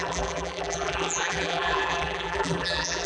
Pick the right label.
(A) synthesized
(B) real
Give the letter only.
A